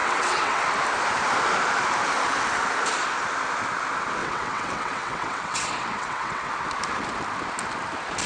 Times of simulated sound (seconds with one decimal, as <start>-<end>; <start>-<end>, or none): 0.0-0.6; 4.2-6.5